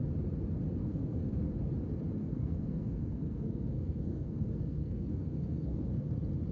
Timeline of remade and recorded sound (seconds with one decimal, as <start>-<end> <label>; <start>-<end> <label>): 0.0-0.8 recorded; 0.8-1.4 remade; 1.4-2.2 recorded; 2.2-6.1 remade; 6.1-6.5 recorded